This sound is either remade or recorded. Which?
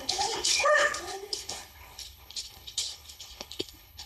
remade